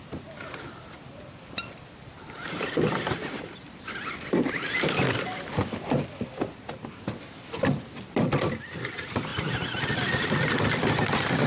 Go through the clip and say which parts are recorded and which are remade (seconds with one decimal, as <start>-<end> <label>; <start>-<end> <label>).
0.0-11.5 remade